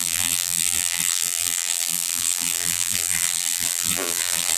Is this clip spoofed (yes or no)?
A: yes